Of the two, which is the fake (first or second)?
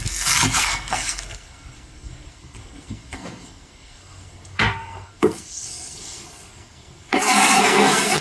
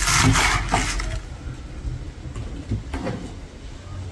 first